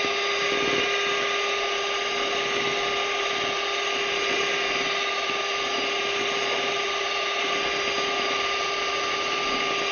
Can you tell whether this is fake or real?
real